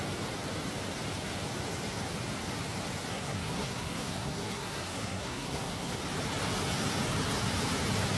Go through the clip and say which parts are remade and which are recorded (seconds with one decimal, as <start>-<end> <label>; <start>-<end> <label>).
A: 0.0-3.1 recorded; 3.1-6.0 remade; 6.0-8.2 recorded